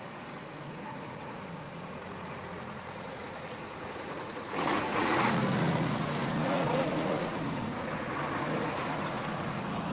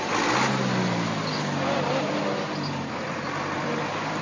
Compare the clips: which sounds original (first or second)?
second